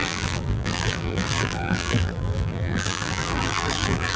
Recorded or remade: remade